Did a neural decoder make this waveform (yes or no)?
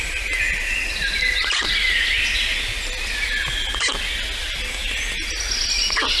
no